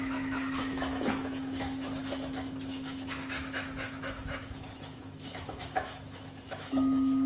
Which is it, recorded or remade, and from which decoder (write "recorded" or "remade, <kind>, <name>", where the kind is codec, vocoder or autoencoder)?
remade, autoencoder, DAC-VAE